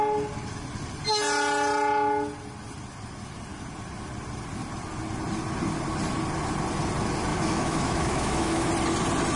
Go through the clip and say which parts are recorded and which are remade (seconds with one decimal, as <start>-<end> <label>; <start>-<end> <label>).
0.0-7.3 recorded; 7.3-8.7 remade; 8.7-9.4 recorded